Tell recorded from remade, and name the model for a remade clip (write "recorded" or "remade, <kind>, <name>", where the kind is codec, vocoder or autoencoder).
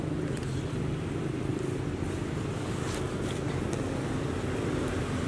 recorded